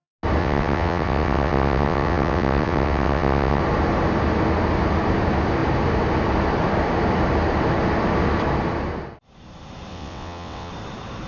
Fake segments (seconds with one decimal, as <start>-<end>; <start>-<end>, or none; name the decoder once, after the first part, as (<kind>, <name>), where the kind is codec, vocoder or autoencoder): 0.4-3.6 (vocoder, WaveNeXt); 9.9-10.7